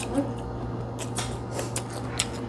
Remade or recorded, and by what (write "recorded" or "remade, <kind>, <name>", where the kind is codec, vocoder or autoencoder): recorded